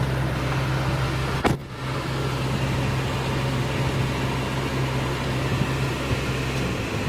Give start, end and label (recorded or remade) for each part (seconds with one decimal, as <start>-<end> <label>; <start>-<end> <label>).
0.0-7.1 recorded